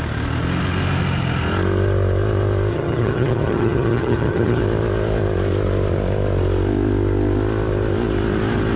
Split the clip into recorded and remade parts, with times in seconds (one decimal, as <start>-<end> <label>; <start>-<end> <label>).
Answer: 0.0-2.7 recorded; 2.7-4.6 remade; 4.6-8.8 recorded